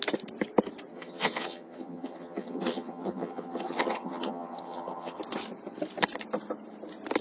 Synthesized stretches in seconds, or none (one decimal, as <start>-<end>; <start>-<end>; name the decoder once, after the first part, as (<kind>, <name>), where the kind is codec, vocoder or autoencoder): 0.9-5.2 (vocoder, HiFi-GAN)